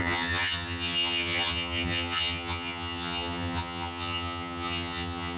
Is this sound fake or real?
fake